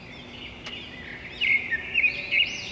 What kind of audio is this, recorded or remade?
recorded